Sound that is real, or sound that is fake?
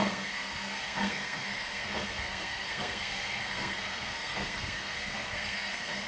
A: fake